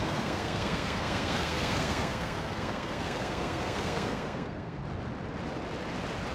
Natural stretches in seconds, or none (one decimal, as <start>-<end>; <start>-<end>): 4.8-6.3